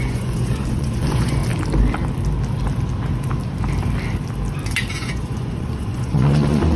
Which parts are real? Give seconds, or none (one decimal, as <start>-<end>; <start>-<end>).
1.4-4.9